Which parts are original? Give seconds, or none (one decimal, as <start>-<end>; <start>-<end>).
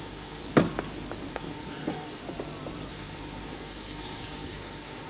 0.4-1.3; 2.2-2.9